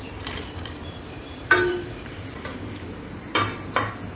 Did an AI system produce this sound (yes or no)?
yes